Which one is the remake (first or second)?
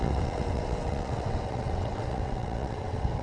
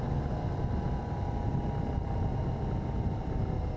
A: first